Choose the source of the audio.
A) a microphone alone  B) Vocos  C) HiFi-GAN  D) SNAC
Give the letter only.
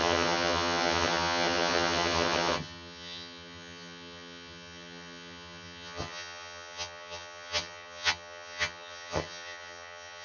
C